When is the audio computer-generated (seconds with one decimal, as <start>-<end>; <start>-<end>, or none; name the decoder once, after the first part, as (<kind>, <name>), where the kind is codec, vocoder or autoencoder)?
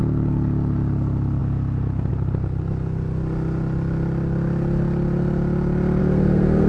6.0-6.7 (codec, SNAC)